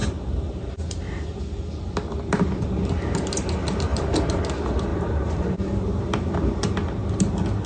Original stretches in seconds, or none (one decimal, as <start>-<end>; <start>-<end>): 1.4-3.9; 4.4-4.9; 6.0-7.7